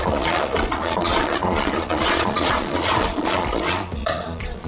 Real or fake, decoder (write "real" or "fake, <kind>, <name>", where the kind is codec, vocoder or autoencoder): fake, vocoder, Vocos